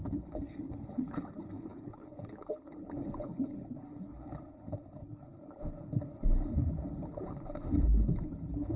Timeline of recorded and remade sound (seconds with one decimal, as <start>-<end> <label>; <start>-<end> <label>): 0.0-8.8 remade